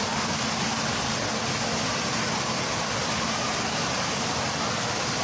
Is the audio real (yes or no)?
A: yes